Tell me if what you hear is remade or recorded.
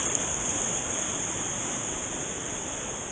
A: recorded